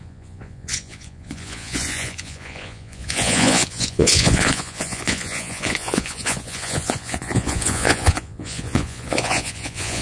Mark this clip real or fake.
fake